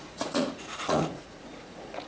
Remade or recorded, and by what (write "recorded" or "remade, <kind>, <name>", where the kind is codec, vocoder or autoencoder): remade, vocoder, Vocos